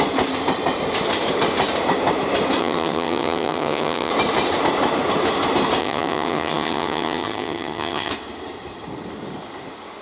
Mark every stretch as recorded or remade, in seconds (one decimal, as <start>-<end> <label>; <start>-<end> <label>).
0.0-2.6 recorded; 2.6-4.1 remade; 4.1-5.8 recorded; 5.8-8.1 remade; 8.1-10.0 recorded